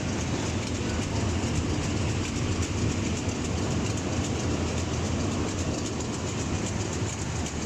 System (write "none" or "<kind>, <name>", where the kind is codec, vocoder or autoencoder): none